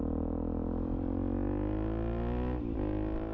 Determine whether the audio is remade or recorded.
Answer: recorded